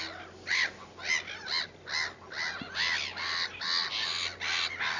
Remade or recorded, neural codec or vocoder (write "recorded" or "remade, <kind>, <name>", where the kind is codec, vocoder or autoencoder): recorded